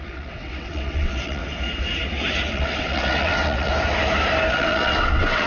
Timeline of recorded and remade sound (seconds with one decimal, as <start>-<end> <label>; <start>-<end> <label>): 0.0-1.4 remade; 1.4-2.5 recorded; 2.5-3.7 remade; 3.7-4.5 recorded; 4.5-5.5 remade